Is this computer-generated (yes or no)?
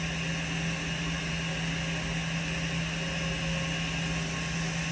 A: no